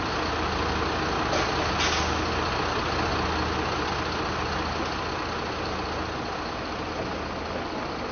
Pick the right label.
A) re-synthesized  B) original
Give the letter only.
B